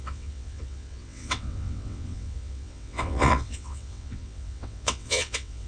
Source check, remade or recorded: remade